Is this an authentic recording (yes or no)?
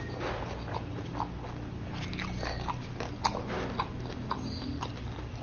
yes